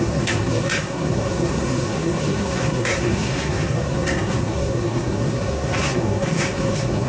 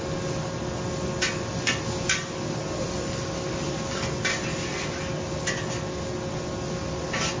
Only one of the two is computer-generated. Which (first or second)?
first